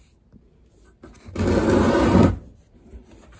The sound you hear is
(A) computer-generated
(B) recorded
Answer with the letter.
B